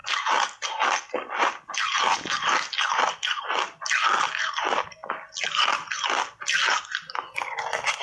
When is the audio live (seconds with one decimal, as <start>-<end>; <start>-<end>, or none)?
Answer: 0.0-8.0